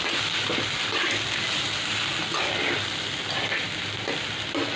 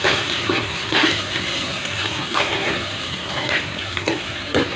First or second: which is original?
first